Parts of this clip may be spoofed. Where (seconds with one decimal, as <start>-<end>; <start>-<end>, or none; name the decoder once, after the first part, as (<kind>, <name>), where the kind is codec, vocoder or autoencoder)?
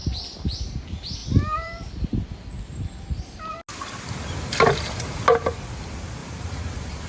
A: 0.0-0.6 (vocoder, BigVGAN v2); 1.2-2.6; 6.2-7.1